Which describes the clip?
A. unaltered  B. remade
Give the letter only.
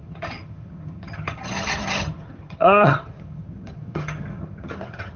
B